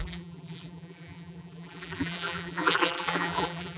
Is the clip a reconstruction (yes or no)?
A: yes